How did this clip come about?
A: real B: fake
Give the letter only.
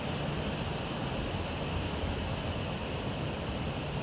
A